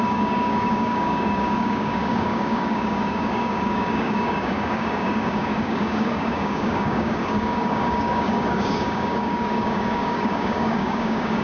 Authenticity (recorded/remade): remade